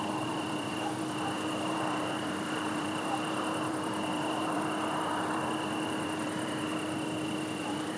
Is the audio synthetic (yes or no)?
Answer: yes